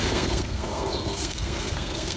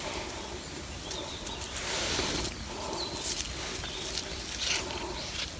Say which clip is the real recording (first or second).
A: second